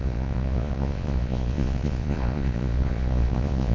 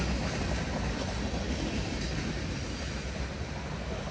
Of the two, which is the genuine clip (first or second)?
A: second